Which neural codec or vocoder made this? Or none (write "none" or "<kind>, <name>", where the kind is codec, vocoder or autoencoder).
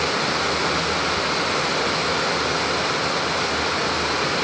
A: none